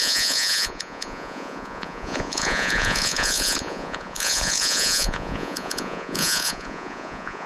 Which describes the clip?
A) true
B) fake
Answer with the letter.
B